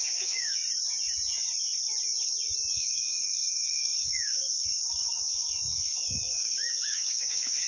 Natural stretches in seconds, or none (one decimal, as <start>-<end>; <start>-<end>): 0.6-2.7